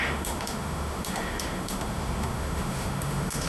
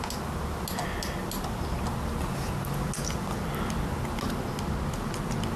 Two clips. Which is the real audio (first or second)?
second